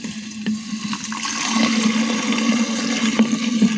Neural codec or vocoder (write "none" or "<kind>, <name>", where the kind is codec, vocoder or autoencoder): none